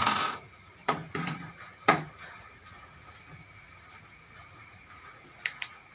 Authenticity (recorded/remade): remade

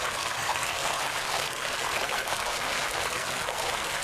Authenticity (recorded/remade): remade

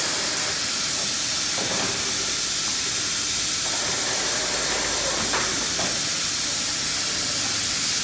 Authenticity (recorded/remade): recorded